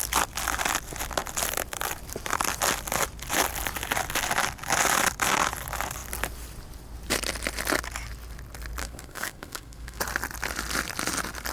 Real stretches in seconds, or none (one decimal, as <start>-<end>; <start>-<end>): 0.0-8.8; 10.0-11.5